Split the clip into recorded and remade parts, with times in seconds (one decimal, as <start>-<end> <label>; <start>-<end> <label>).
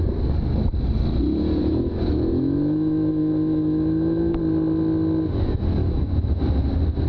0.0-1.6 recorded; 1.6-4.4 remade; 4.4-5.8 recorded; 5.8-6.4 remade; 6.4-7.1 recorded